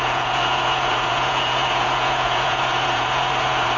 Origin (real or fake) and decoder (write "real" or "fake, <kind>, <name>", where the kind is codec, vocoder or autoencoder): fake, vocoder, Vocos